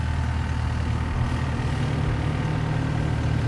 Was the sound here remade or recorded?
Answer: recorded